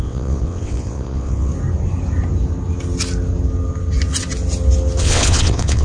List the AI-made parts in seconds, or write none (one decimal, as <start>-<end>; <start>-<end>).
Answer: 0.0-1.5; 5.0-5.8